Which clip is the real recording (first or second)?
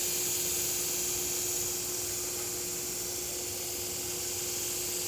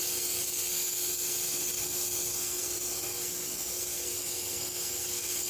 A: first